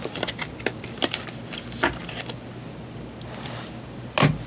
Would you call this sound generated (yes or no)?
no